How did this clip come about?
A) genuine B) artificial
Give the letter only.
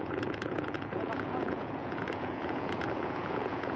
B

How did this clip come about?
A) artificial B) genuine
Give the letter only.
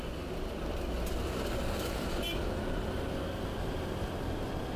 B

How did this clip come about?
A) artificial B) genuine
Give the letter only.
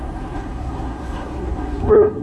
A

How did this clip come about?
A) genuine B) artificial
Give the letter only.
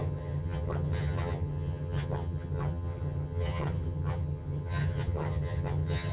B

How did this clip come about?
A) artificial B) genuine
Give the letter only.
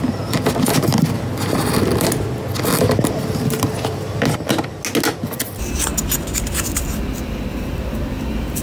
B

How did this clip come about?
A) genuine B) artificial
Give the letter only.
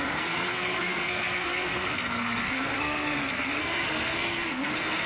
B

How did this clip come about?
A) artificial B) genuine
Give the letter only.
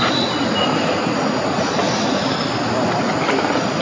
B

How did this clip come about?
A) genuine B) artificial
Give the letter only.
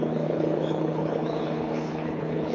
B